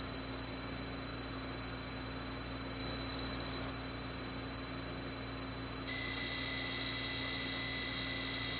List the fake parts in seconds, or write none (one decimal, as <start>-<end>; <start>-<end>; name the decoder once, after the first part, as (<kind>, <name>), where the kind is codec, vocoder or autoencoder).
2.8-3.7 (vocoder, BigVGAN v2)